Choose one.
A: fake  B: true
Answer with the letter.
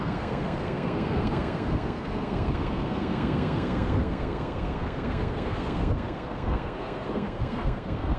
A